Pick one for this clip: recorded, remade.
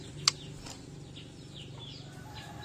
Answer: recorded